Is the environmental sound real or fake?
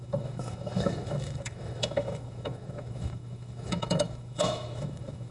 fake